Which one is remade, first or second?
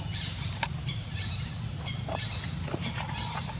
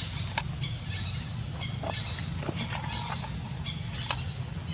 first